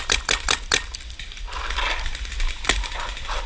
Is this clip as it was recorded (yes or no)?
yes